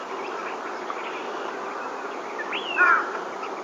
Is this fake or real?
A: real